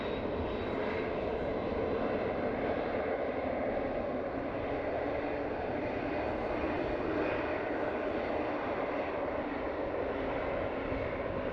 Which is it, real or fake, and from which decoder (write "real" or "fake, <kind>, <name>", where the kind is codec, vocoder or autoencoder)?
real